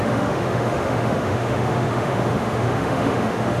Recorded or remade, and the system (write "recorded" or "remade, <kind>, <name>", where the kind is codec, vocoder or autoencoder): remade, autoencoder, DAC-VAE